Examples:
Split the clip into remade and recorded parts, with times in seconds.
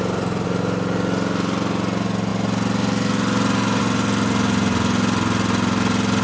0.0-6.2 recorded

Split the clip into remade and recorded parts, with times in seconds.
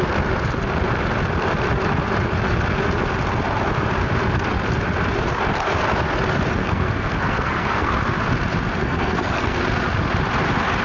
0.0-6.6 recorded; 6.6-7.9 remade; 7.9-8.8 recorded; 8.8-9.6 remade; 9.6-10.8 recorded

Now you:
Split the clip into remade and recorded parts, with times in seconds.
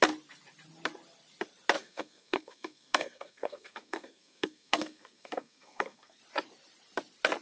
0.0-1.8 recorded; 1.8-6.2 remade; 6.2-7.4 recorded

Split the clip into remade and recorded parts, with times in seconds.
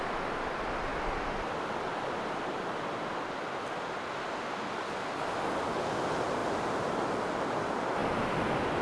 0.0-6.4 recorded; 6.4-7.6 remade; 7.6-8.8 recorded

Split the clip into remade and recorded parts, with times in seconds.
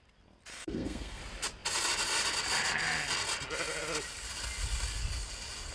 0.0-0.5 recorded; 0.5-1.2 remade; 1.2-5.7 recorded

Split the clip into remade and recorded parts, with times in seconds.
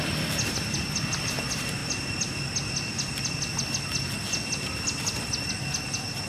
0.0-6.3 recorded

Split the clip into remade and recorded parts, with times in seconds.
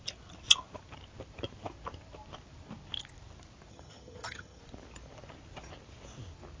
0.0-3.7 recorded; 3.7-4.6 remade; 4.6-6.6 recorded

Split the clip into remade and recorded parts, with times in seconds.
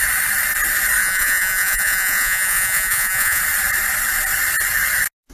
0.0-1.0 recorded; 1.0-3.4 remade; 3.4-5.3 recorded